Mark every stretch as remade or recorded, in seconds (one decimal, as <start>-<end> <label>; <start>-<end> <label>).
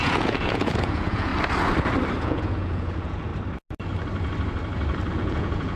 0.0-1.3 remade; 1.3-2.2 recorded; 2.2-3.3 remade; 3.3-5.1 recorded; 5.1-5.8 remade